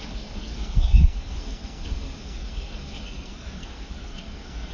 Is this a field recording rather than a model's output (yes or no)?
no